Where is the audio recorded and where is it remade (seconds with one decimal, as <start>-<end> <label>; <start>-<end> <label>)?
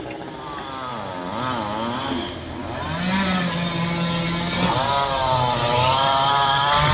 0.0-6.9 recorded